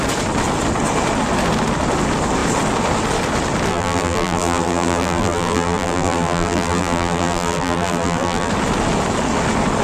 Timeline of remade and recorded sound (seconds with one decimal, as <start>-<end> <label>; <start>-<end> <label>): 0.0-3.7 recorded; 3.7-8.5 remade; 8.5-9.8 recorded